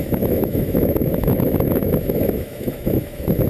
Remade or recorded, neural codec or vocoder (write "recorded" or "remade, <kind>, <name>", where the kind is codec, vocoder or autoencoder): remade, autoencoder, DAC-VAE